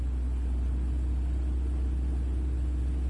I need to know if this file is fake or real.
real